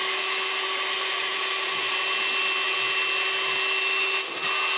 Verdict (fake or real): real